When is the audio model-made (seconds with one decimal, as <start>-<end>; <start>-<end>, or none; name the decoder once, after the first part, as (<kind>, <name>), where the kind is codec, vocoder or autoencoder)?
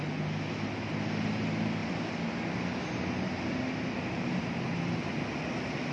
none